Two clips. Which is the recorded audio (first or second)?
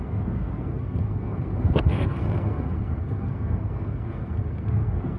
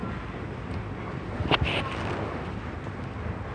second